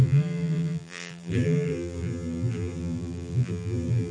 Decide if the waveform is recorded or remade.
remade